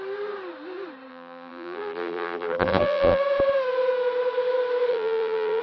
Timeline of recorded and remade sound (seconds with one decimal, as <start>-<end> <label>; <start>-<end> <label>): 0.0-1.1 recorded; 1.1-3.2 remade; 3.2-4.9 recorded; 4.9-5.6 remade